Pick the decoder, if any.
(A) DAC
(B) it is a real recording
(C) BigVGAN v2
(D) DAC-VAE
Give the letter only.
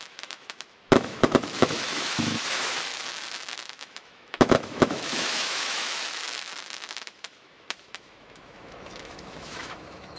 D